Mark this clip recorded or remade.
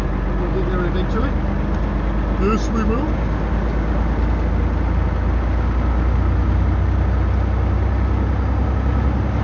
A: recorded